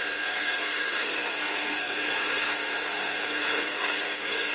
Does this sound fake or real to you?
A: fake